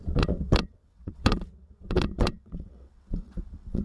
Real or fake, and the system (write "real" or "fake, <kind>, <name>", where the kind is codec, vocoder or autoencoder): fake, vocoder, WaveNeXt